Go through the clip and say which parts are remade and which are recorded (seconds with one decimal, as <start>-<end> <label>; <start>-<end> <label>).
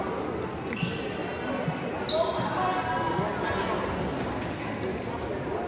0.0-5.7 recorded